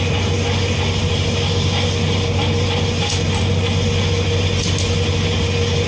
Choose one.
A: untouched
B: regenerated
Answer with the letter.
A